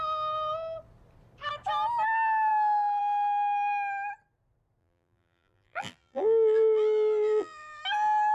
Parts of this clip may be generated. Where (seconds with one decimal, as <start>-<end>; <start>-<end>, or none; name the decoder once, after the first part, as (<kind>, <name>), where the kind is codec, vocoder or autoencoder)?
4.8-7.8 (vocoder, BigVGAN v2)